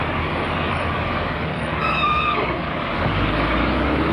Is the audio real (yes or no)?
no